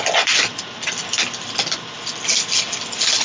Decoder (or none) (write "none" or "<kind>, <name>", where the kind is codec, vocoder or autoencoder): none